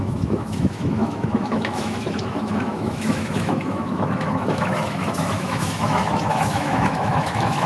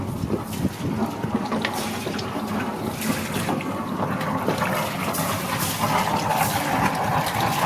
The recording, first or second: second